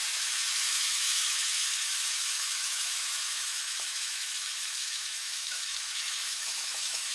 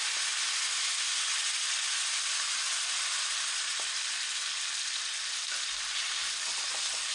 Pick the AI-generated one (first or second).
first